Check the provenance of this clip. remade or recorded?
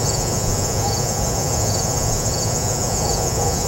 remade